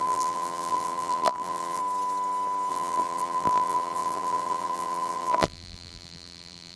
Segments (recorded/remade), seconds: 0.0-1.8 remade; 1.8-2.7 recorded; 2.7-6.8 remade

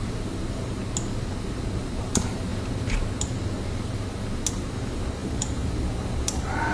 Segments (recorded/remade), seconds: 0.0-0.8 remade; 0.8-1.8 recorded; 1.8-2.5 remade; 2.5-4.5 recorded; 4.5-6.7 remade

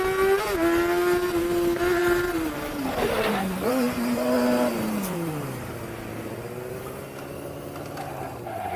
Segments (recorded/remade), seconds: 0.0-2.0 recorded; 2.0-5.7 remade; 5.7-8.8 recorded

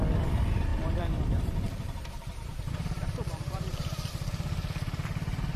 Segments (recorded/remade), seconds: 0.0-0.7 recorded; 0.7-4.1 remade; 4.1-5.6 recorded

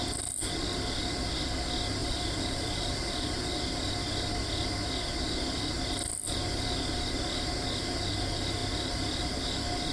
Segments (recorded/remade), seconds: 0.0-2.0 recorded; 2.0-3.6 remade; 3.6-9.9 recorded